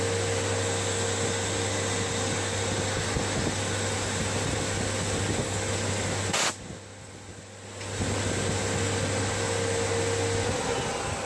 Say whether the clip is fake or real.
real